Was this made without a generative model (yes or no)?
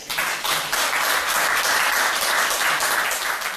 yes